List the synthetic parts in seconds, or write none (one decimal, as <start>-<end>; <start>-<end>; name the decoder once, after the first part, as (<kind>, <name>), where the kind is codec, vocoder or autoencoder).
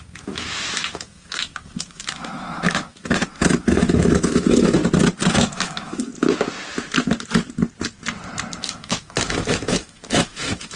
0.0-4.8 (autoencoder, DAC-VAE); 5.3-6.1; 8.6-10.8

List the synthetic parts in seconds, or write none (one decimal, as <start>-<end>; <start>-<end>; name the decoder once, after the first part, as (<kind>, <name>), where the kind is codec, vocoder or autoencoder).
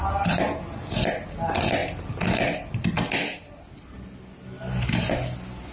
none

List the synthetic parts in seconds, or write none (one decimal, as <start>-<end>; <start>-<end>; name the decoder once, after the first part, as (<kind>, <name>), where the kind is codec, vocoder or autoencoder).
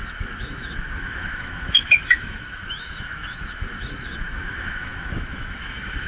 0.0-6.1 (autoencoder, DAC-VAE)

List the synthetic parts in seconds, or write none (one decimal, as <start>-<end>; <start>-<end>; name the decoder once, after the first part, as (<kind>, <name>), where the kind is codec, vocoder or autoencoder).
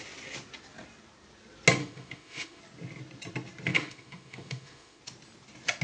1.8-2.6 (autoencoder, DAC-VAE); 3.7-5.0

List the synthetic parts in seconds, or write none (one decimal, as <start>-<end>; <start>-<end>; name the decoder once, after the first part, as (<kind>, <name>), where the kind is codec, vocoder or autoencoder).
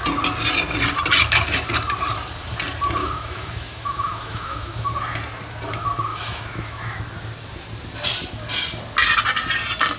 3.0-4.9 (autoencoder, DAC-VAE); 6.1-7.0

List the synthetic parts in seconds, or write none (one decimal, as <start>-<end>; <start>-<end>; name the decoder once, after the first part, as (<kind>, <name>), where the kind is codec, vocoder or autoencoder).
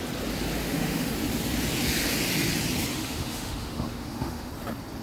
0.6-1.1 (autoencoder, DAC-VAE); 2.9-4.5